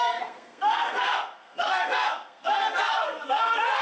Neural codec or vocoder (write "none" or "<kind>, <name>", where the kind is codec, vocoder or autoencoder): codec, SNAC